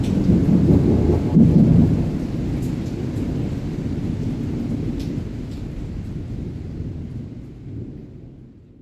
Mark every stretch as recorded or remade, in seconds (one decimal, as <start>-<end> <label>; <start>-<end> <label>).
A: 0.0-8.8 recorded